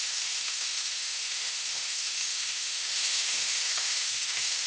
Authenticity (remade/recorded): remade